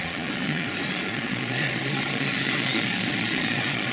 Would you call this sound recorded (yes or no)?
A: no